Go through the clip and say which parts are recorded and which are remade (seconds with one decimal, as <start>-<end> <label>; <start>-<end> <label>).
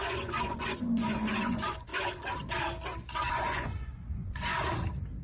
0.0-1.9 remade; 1.9-3.3 recorded; 3.3-4.5 remade; 4.5-5.2 recorded